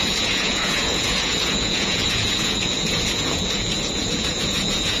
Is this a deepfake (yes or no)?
yes